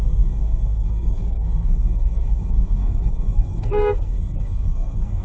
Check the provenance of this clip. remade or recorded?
remade